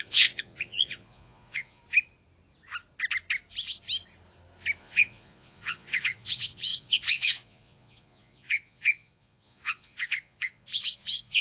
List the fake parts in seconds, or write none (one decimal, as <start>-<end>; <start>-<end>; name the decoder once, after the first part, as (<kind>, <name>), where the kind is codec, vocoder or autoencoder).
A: 0.0-1.8 (vocoder, Vocos); 4.8-11.4